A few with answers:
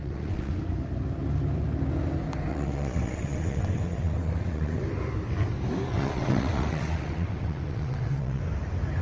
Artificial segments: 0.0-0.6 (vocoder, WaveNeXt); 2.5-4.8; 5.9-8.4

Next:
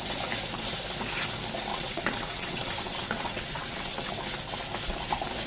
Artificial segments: 1.7-4.1 (vocoder, WaveNeXt)

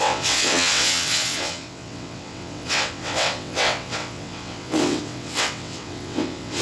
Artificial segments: 0.0-6.6 (vocoder, WaveNeXt)

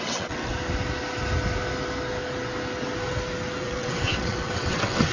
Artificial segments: 0.0-0.5 (vocoder, WaveNeXt); 3.6-5.1

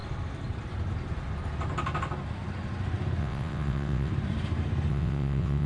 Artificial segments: 3.2-4.1 (vocoder, WaveNeXt); 4.9-5.7

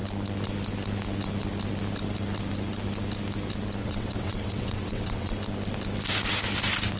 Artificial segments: 3.8-5.4 (vocoder, WaveNeXt)

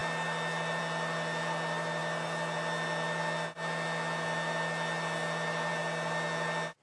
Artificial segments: none

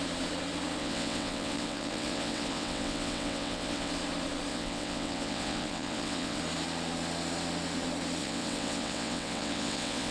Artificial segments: 0.8-3.9 (vocoder, WaveNeXt); 4.5-6.4; 8.2-10.1